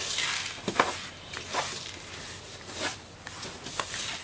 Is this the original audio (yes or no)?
yes